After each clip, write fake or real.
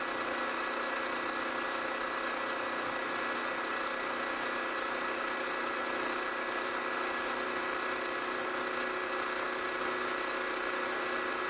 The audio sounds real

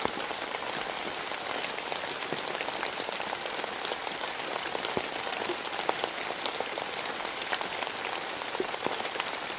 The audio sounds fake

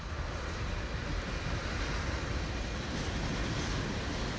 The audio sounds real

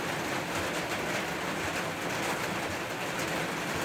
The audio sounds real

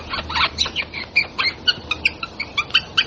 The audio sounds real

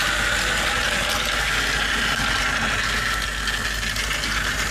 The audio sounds real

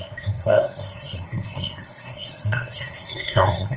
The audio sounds fake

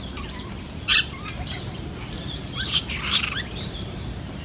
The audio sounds fake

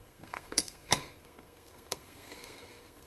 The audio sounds fake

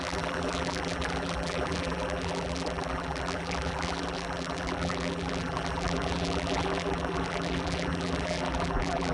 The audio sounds fake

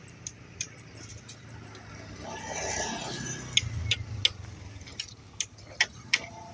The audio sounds real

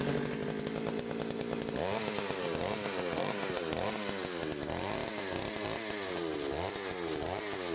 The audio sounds real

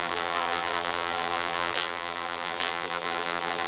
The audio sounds fake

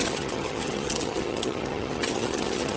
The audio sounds fake